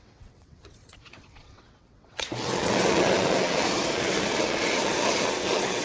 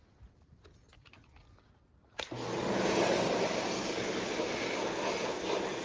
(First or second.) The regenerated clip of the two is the first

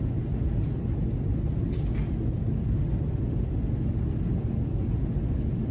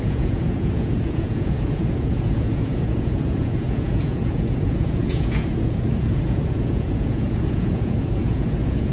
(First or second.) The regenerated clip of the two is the second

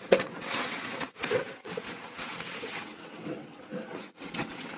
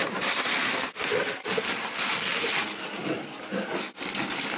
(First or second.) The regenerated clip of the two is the first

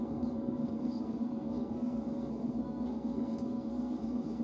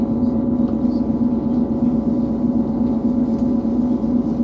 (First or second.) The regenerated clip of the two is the first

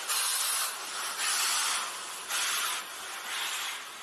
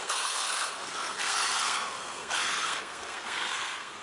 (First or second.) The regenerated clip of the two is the second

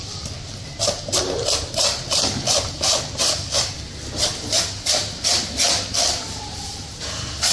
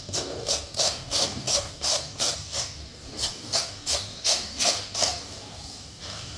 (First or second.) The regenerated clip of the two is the second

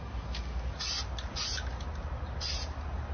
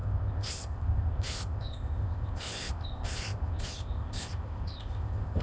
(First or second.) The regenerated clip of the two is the second